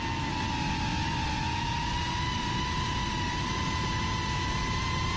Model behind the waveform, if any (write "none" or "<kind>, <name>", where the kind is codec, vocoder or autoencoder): none